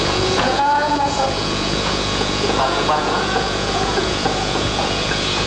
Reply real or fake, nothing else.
fake